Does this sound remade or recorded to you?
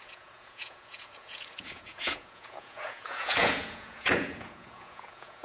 remade